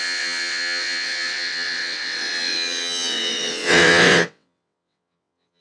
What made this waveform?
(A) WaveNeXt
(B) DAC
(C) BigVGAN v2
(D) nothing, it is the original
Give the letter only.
A